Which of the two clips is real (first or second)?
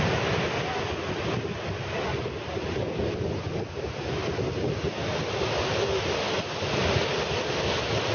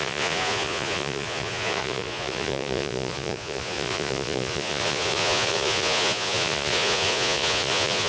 first